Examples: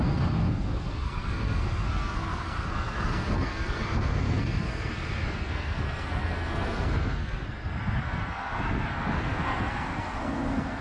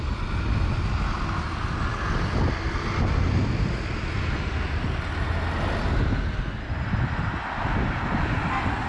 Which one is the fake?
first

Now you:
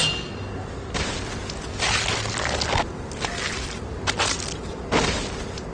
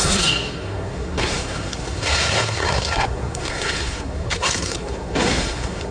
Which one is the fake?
second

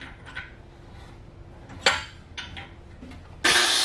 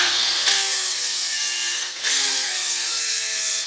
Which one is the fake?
second